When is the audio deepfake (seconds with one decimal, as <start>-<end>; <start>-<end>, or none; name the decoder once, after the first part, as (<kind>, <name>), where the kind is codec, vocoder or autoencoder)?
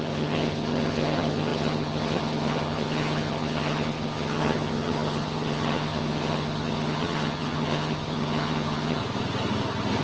0.0-9.0 (vocoder, HiFi-GAN)